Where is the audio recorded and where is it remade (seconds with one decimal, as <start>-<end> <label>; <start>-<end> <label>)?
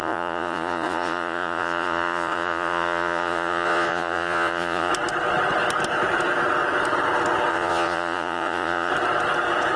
0.0-4.9 remade; 4.9-7.5 recorded; 7.5-8.9 remade; 8.9-9.8 recorded